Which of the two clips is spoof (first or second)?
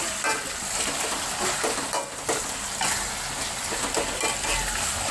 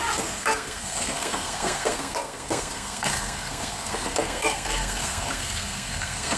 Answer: second